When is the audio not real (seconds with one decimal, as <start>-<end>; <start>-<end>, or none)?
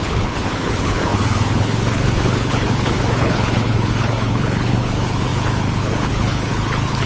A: 0.0-7.1